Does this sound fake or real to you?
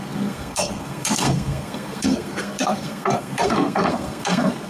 fake